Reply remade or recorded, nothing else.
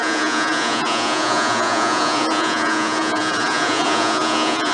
remade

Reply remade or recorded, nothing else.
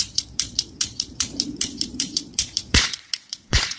remade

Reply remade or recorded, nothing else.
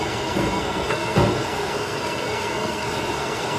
remade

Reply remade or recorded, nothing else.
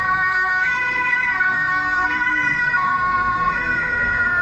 remade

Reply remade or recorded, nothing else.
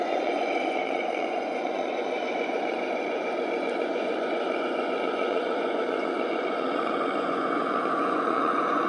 remade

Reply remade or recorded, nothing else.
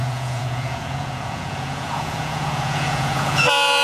remade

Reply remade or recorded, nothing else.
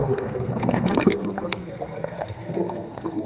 remade